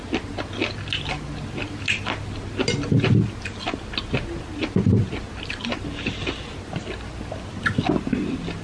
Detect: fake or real real